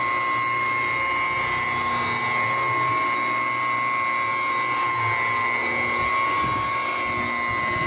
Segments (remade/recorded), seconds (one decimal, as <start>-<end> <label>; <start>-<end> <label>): 0.0-7.9 recorded